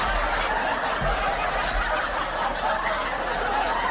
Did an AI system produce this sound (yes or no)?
no